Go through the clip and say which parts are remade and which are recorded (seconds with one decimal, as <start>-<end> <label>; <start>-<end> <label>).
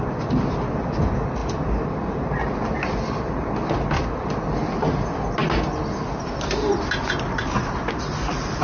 0.0-8.6 recorded